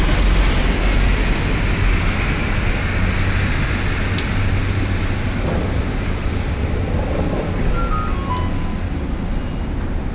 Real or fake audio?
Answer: real